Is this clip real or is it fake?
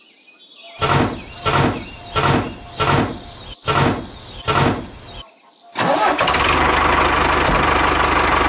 real